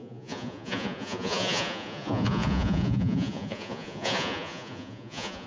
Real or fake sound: fake